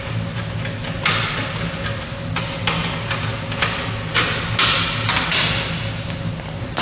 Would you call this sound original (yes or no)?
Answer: yes